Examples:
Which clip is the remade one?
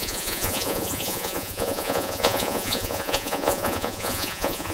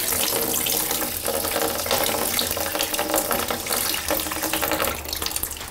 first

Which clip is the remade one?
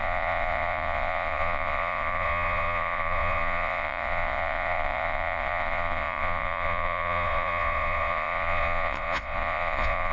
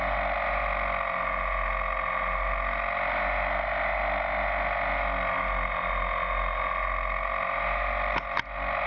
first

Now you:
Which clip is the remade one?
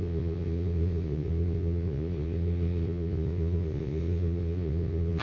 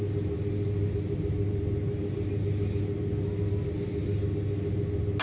first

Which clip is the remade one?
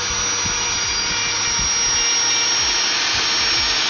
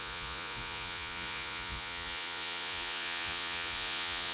second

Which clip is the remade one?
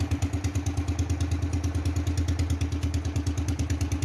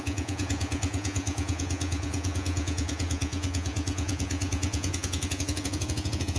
second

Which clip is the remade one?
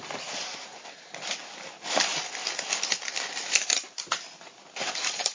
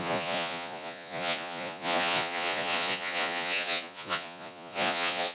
second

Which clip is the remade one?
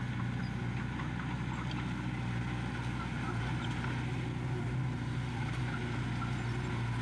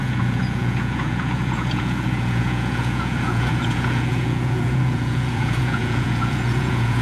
second